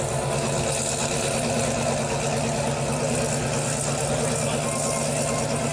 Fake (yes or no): no